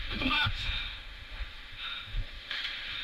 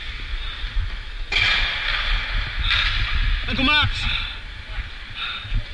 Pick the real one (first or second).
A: second